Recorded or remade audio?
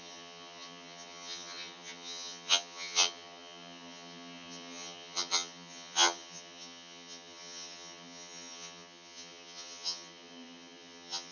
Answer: remade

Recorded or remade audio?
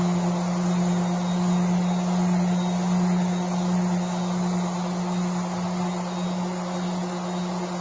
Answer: recorded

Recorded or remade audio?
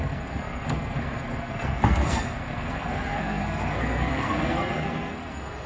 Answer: remade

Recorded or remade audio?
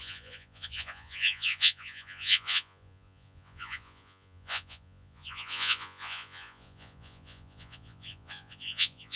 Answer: remade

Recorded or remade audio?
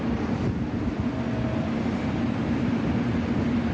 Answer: recorded